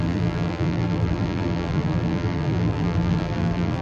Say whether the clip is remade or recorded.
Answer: remade